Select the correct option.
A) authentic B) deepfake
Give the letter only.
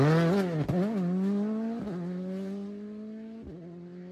A